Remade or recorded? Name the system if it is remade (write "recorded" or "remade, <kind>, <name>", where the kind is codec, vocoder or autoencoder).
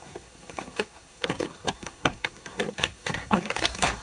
remade, codec, SNAC